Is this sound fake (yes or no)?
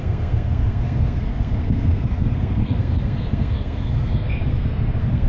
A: yes